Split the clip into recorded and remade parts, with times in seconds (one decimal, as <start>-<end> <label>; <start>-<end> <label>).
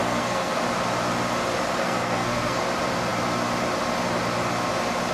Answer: 0.0-0.6 remade; 0.6-1.8 recorded; 1.8-2.6 remade; 2.6-5.1 recorded